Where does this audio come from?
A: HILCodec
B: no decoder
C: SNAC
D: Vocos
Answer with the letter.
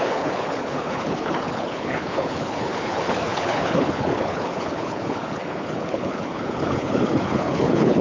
A